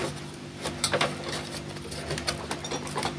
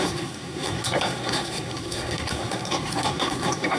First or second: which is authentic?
first